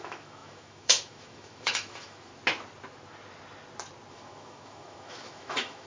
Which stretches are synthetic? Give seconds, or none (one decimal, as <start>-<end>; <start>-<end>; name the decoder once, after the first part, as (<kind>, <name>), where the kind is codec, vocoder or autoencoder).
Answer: 0.0-2.3 (autoencoder, DAC-VAE); 4.1-5.9